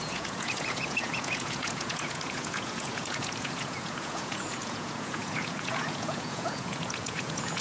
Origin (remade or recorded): remade